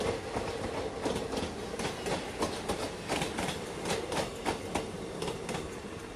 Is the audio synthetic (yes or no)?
no